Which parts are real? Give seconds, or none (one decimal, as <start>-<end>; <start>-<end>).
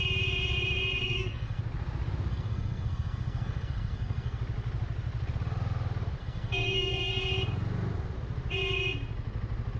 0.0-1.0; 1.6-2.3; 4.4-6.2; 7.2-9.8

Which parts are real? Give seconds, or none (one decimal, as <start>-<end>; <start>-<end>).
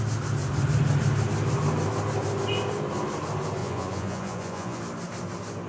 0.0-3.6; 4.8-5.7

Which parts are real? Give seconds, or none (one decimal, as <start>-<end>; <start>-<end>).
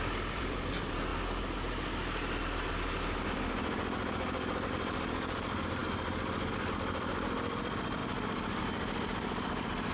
1.1-4.7; 5.8-6.5; 8.0-8.6